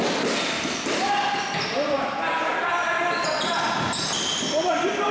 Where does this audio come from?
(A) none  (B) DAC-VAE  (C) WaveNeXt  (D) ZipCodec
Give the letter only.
A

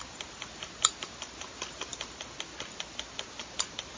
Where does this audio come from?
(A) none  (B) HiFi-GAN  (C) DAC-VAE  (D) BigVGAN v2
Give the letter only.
A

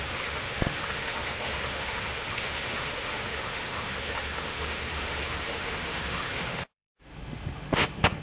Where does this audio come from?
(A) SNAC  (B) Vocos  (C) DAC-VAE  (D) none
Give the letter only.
C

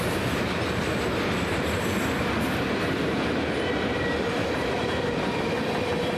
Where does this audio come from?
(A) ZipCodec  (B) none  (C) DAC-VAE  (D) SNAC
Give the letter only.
B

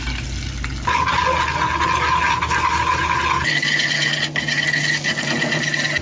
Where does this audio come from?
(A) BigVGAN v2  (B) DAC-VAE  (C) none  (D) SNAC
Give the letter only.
C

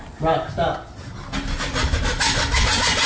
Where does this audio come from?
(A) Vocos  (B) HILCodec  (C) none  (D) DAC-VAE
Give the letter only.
C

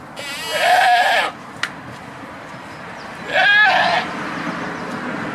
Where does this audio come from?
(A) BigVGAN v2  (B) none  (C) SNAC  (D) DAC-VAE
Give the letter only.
B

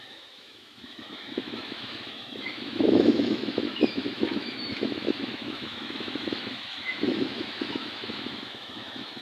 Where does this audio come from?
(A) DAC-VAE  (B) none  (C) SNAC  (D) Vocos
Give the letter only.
A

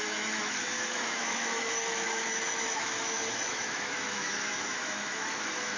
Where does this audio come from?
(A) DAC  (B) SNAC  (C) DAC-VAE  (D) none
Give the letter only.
C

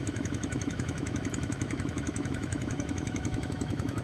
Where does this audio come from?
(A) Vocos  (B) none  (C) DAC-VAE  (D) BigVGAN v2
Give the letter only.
C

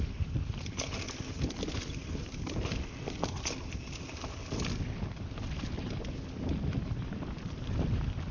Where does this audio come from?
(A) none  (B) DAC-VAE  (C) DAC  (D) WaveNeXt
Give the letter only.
A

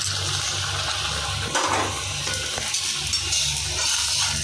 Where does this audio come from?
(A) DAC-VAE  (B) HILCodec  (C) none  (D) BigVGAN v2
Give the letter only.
C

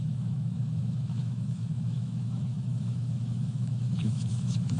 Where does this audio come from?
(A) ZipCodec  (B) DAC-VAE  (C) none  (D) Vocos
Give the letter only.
B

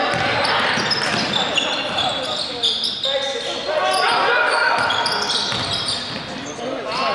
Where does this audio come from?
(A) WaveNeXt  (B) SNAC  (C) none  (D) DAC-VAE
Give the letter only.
C